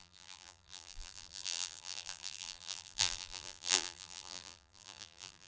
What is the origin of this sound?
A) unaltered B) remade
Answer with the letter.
B